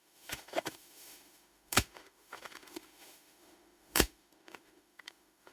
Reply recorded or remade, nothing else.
remade